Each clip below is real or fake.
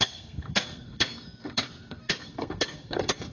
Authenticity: fake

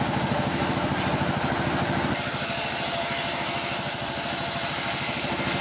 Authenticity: real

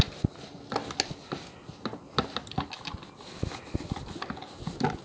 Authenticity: real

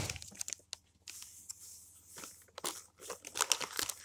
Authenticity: real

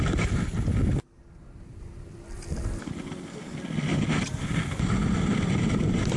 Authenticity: real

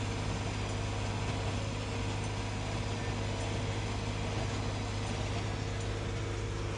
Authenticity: real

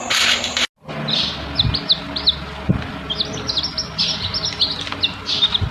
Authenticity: real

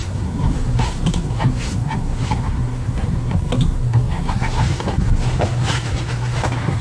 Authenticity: fake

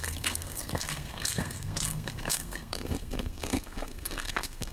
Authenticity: fake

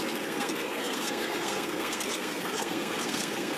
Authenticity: fake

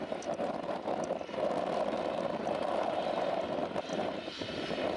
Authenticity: real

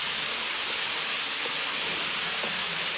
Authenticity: real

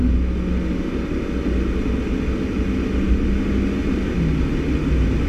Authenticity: real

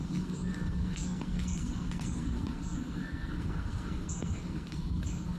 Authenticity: fake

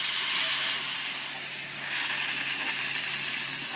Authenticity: real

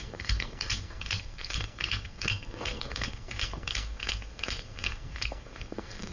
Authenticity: fake